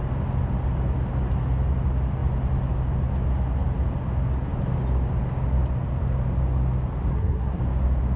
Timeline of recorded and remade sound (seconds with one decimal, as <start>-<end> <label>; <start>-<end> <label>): 0.0-7.1 recorded; 7.1-7.6 remade; 7.6-8.2 recorded